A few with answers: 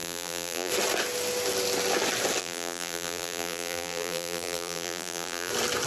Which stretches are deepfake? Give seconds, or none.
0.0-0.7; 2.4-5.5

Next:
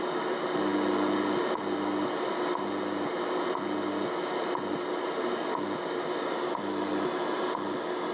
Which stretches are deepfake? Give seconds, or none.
none

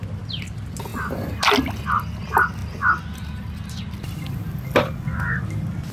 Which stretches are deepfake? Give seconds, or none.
none